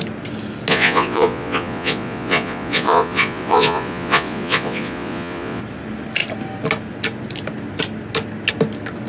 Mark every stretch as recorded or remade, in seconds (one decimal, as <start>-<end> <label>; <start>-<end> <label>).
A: 0.0-0.7 recorded; 0.7-5.6 remade; 5.6-9.1 recorded